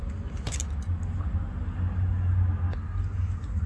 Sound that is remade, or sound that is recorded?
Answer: recorded